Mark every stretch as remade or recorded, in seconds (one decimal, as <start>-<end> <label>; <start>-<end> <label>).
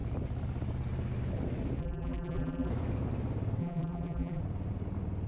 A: 0.0-1.8 recorded; 1.8-2.7 remade; 2.7-3.6 recorded; 3.6-4.4 remade; 4.4-5.3 recorded